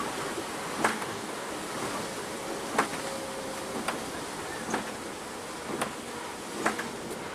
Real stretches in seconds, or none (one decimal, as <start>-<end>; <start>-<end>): 0.0-0.9; 1.5-7.3